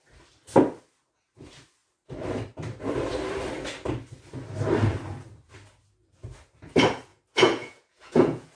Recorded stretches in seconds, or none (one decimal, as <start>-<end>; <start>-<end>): 0.0-7.1